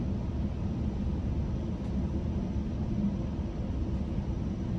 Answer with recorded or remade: recorded